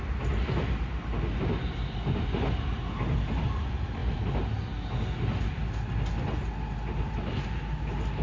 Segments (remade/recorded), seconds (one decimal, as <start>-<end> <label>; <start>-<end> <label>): 0.0-8.2 recorded